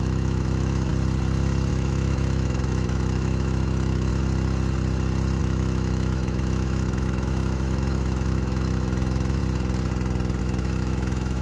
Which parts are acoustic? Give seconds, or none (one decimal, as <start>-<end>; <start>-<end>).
0.9-1.7; 4.1-5.4; 9.4-10.4